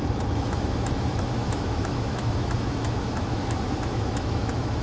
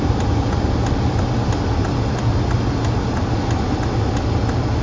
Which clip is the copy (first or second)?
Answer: first